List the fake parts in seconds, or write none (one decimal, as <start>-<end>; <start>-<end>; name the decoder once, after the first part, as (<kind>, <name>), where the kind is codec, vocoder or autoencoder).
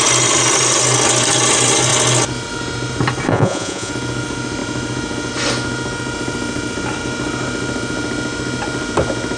3.3-3.9 (vocoder, Vocos)